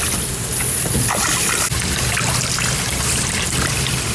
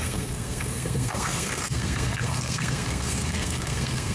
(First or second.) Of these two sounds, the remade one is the second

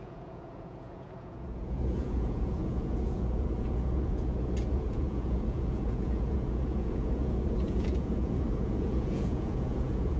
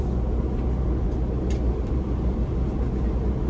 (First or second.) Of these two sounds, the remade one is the first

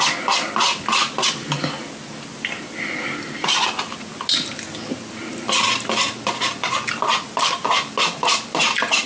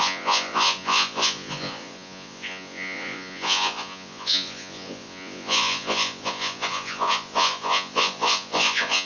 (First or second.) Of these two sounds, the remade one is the second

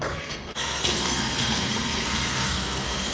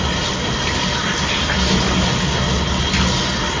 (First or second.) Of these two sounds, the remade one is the first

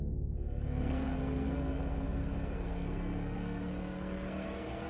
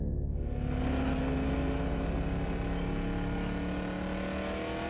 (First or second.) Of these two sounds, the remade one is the first